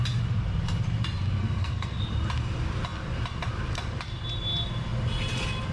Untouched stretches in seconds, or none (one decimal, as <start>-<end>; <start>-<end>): 0.0-1.4; 2.0-5.7